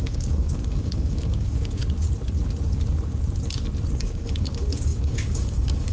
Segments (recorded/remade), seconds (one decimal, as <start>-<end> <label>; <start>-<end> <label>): 0.0-1.8 remade; 1.8-4.0 recorded; 4.0-5.9 remade